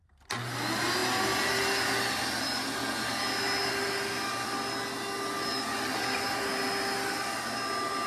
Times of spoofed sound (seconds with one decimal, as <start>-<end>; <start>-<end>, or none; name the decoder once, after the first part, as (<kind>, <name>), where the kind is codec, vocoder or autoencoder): none